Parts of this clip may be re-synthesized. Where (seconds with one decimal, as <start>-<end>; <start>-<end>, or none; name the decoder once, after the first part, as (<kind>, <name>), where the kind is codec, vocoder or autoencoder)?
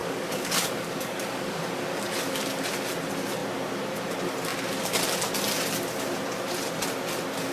0.0-1.6 (codec, DAC)